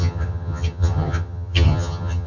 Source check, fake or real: fake